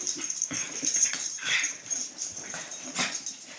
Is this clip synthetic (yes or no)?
yes